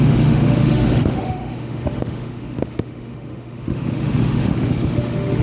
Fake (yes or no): yes